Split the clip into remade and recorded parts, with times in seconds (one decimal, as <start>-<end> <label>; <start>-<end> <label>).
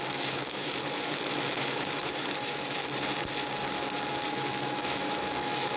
0.0-2.8 remade; 2.8-4.1 recorded; 4.1-5.8 remade